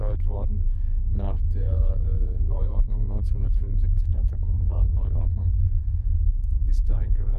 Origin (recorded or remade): remade